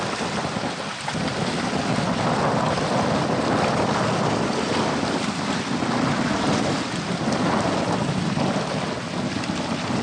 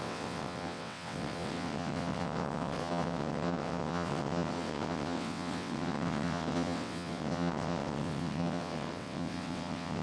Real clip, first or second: first